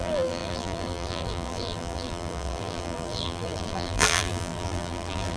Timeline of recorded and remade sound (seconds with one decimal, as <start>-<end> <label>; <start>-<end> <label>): 0.0-5.4 remade